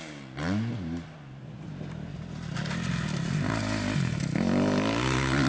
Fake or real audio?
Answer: real